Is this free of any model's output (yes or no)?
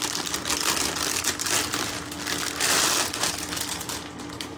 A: yes